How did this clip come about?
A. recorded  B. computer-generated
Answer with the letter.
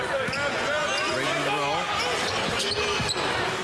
A